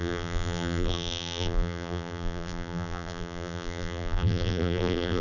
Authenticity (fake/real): fake